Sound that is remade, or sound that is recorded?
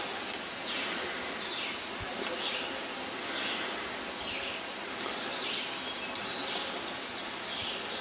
recorded